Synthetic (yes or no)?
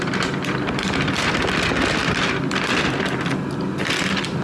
no